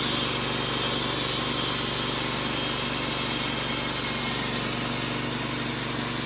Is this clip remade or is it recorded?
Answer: recorded